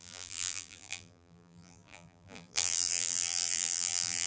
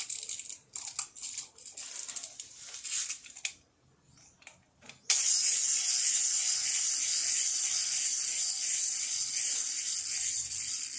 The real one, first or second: second